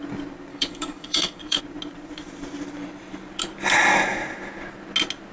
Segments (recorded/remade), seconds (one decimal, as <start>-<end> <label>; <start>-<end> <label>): 0.0-0.5 recorded; 0.5-1.6 remade; 1.6-5.3 recorded

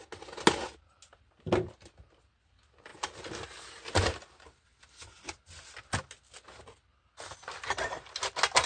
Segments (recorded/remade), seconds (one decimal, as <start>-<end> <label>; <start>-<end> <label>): 0.0-8.7 recorded

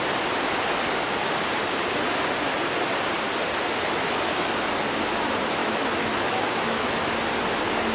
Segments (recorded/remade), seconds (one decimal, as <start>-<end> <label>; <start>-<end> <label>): 0.0-5.6 recorded; 5.6-7.1 remade; 7.1-7.9 recorded

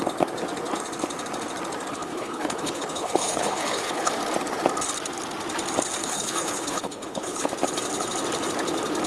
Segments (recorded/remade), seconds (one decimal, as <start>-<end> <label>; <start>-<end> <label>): 0.0-1.9 recorded; 1.9-4.1 remade; 4.1-6.0 recorded; 6.0-7.5 remade; 7.5-9.1 recorded

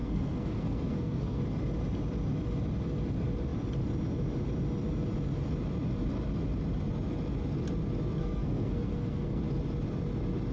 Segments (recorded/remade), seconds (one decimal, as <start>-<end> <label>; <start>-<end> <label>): 0.0-1.4 remade; 1.4-8.2 recorded; 8.2-9.4 remade; 9.4-10.5 recorded

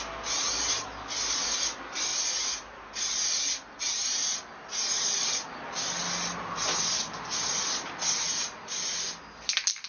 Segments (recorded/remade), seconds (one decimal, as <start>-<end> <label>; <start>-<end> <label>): 0.0-9.9 recorded

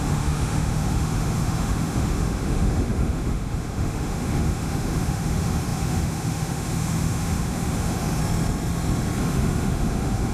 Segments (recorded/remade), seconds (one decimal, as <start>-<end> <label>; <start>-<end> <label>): 0.0-8.2 remade; 8.2-9.2 recorded; 9.2-10.3 remade

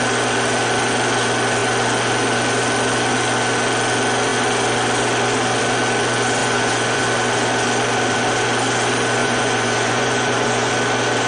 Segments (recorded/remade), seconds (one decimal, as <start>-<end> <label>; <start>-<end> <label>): 0.0-6.4 recorded; 6.4-7.0 remade; 7.0-9.2 recorded; 9.2-10.7 remade; 10.7-11.3 recorded